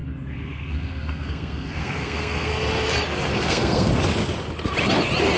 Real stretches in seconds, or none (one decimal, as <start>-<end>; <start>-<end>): 2.5-3.3; 3.9-5.4